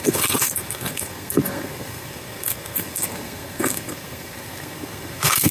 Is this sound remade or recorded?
remade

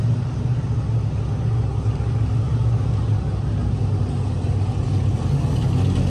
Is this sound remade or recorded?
recorded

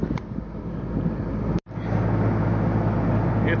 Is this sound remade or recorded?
recorded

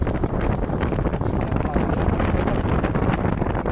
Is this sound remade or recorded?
recorded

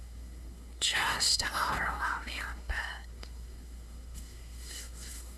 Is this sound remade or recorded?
remade